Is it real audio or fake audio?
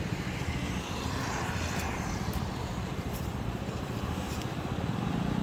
fake